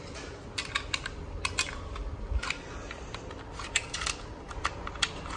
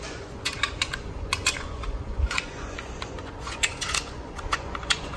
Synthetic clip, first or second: second